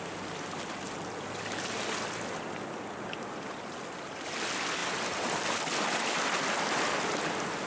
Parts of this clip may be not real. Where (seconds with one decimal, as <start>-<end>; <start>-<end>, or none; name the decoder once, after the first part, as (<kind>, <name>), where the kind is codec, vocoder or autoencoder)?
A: none